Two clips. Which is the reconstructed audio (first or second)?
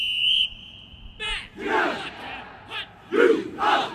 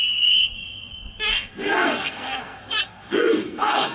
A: second